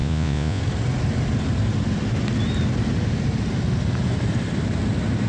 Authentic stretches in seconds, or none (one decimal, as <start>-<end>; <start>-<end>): 0.6-5.3